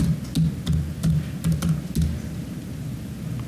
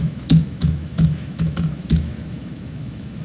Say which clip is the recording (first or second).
first